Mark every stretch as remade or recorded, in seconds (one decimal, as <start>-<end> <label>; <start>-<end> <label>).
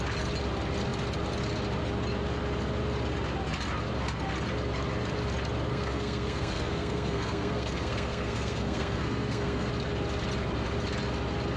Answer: 0.0-5.7 recorded; 5.7-9.7 remade; 9.7-11.6 recorded